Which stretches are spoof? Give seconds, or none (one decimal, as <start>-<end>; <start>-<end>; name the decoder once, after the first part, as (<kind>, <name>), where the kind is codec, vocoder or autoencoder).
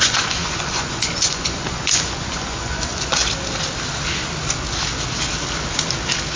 0.0-3.2 (vocoder, Vocos)